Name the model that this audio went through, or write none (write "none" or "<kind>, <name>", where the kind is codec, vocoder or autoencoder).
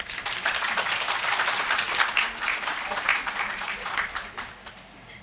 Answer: none